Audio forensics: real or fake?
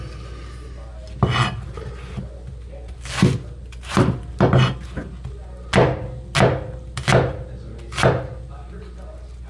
real